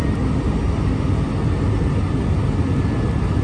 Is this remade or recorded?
recorded